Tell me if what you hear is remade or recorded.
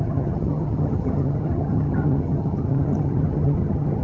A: remade